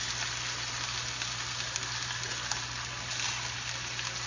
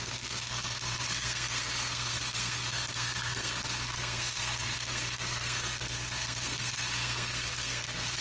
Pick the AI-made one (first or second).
second